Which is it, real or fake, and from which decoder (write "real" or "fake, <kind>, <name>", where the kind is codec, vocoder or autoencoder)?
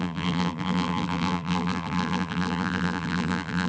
fake, vocoder, BigVGAN v2